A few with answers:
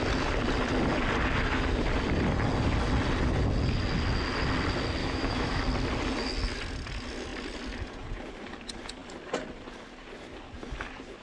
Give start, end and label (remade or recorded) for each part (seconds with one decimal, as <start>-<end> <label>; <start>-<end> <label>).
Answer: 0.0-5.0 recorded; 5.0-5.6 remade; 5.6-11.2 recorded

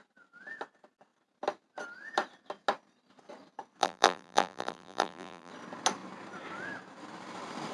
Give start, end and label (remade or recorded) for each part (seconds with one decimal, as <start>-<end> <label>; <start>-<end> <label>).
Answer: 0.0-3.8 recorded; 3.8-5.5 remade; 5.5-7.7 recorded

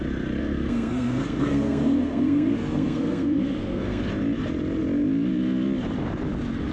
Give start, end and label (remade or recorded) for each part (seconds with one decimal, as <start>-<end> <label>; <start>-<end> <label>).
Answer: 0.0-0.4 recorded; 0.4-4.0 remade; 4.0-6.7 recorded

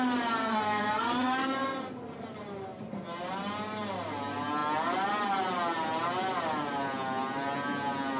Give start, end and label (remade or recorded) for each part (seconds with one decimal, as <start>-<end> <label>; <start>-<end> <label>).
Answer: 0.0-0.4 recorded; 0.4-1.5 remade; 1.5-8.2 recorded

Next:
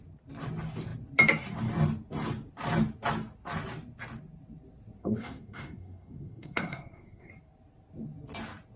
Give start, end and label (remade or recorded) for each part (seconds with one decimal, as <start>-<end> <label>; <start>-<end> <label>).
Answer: 0.0-5.0 recorded; 5.0-7.3 remade; 7.3-8.8 recorded